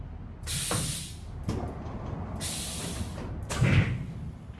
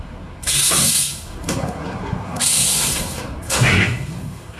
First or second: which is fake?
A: second